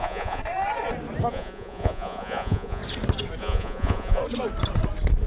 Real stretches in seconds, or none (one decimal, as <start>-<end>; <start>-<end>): 0.4-1.3; 2.8-3.4; 4.2-5.3